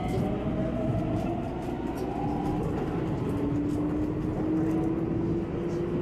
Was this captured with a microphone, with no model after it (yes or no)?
yes